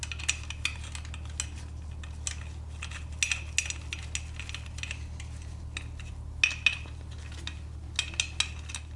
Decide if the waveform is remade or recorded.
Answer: recorded